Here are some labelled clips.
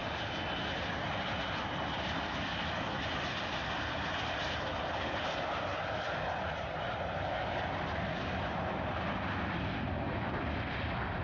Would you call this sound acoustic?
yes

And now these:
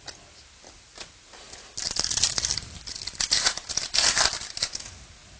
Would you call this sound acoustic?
yes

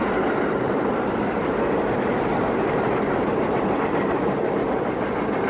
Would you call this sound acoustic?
yes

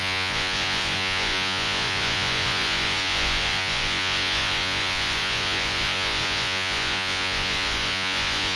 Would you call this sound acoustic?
no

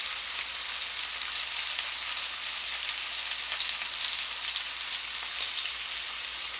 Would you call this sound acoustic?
yes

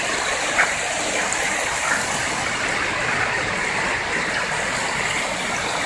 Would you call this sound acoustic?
yes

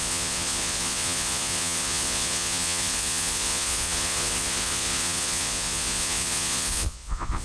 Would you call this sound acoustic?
no